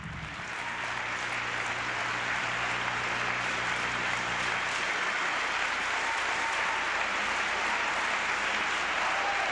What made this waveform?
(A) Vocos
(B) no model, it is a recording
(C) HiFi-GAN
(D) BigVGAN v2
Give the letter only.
D